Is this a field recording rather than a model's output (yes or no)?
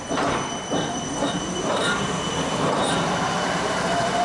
no